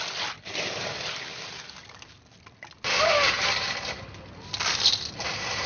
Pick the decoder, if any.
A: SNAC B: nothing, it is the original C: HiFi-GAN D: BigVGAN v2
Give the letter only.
B